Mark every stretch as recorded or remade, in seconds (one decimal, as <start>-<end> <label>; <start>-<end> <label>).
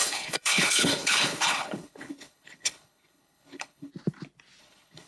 0.0-3.9 remade; 3.9-4.6 recorded; 4.6-5.1 remade